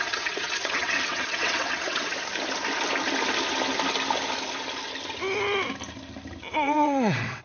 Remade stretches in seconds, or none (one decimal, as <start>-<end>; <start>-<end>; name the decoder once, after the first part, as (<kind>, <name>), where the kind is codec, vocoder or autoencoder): 0.0-2.1 (vocoder, WaveNeXt); 6.5-7.4